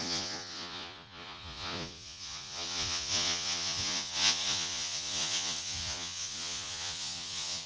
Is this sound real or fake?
fake